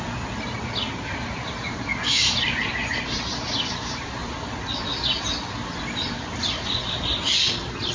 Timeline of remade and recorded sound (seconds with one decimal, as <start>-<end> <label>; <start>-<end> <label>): 0.0-7.9 recorded